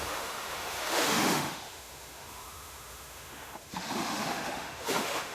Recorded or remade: remade